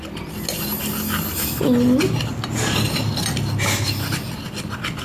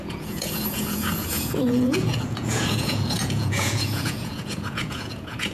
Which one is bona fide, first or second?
first